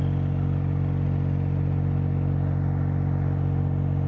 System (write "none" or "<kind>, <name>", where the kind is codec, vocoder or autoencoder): none